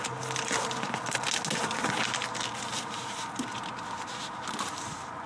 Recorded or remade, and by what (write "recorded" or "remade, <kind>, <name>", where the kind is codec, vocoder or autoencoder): recorded